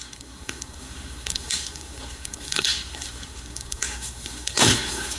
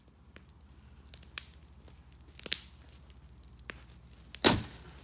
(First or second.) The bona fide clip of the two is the second